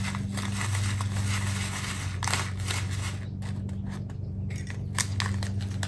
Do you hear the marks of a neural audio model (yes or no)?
no